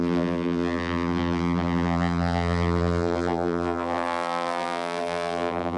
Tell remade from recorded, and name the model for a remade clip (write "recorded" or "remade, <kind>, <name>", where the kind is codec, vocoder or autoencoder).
remade, vocoder, BigVGAN v2